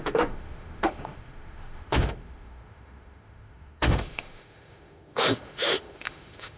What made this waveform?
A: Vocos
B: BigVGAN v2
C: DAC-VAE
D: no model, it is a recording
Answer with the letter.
C